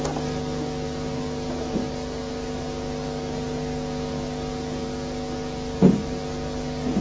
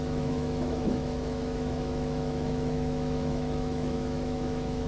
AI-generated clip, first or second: second